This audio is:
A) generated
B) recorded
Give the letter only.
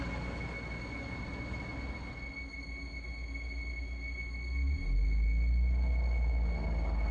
B